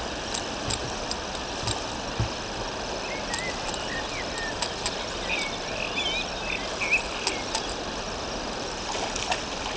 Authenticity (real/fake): real